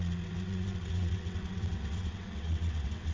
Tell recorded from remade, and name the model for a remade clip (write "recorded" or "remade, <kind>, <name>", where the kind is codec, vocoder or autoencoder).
remade, vocoder, WaveNeXt